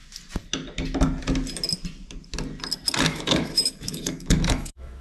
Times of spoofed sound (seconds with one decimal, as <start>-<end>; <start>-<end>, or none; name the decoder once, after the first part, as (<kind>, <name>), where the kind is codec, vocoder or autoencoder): 3.0-5.0 (autoencoder, DAC-VAE)